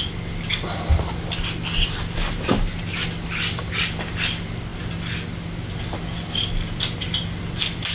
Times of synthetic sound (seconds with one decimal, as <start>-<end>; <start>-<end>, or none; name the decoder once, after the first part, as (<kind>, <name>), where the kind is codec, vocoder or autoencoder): none